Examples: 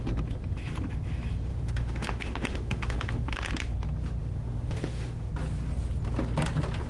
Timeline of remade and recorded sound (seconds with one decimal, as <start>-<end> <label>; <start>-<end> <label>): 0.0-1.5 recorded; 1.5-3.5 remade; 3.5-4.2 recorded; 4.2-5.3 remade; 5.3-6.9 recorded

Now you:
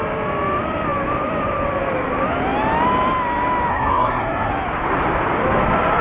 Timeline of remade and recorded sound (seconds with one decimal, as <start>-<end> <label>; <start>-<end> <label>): 0.0-3.7 recorded; 3.7-4.5 remade; 4.5-6.0 recorded

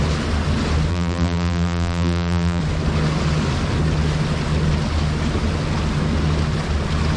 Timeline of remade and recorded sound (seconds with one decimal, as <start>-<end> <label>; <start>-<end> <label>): 0.0-0.9 recorded; 0.9-2.6 remade; 2.6-7.2 recorded